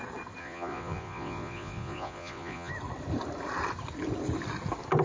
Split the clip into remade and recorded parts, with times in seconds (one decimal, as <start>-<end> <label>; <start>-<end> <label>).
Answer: 0.0-0.4 recorded; 0.4-2.7 remade; 2.7-5.0 recorded